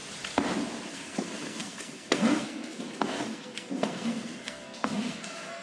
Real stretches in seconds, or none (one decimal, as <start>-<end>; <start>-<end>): 0.0-0.9